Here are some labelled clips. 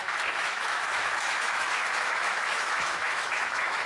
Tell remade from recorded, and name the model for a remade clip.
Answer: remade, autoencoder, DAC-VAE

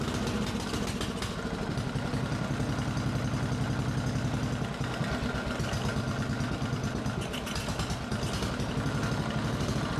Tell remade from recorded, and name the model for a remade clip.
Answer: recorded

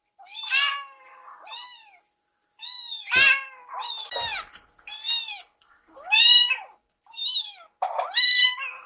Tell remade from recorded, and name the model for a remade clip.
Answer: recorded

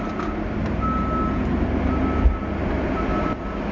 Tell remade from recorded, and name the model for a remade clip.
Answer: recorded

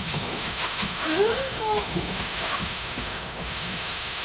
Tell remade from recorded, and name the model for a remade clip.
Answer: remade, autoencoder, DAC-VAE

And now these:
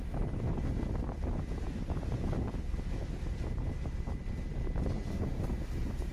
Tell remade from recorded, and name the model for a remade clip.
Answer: recorded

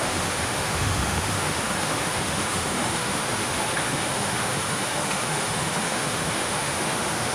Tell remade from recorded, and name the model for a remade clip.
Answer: remade, autoencoder, DAC-VAE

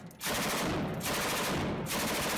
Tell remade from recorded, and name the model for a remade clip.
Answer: recorded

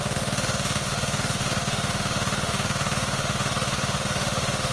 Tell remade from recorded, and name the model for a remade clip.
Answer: remade, autoencoder, DAC-VAE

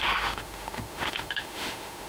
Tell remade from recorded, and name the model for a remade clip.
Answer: remade, autoencoder, DAC-VAE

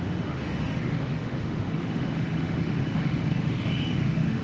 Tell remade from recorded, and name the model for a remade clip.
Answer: remade, autoencoder, DAC-VAE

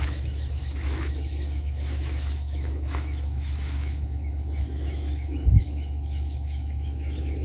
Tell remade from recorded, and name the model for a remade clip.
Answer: remade, autoencoder, DAC-VAE